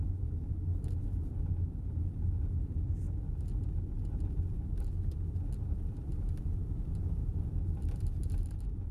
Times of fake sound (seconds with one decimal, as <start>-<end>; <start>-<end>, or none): 6.1-6.7; 7.2-8.9